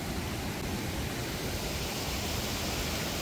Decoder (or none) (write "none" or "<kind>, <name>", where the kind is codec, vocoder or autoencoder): none